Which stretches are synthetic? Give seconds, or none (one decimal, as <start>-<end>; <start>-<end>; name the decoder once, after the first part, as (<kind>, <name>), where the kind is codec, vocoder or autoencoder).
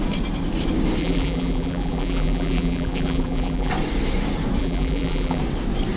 1.0-3.7 (vocoder, BigVGAN v2); 4.6-5.4